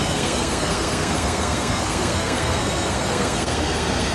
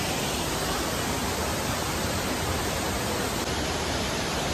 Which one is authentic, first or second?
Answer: second